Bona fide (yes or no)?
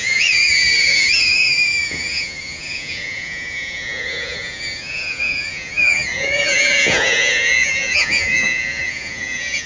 no